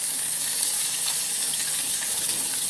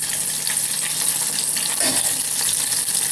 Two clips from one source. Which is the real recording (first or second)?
second